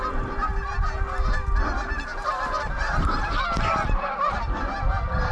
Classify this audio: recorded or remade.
recorded